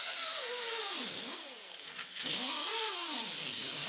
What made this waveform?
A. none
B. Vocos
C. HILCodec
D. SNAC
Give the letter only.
D